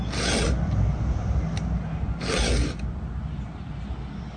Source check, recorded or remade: recorded